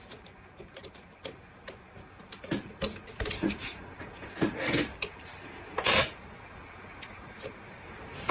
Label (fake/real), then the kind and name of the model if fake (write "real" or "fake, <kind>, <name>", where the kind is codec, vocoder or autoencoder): fake, vocoder, BigVGAN v2